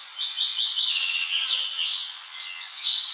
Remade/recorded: remade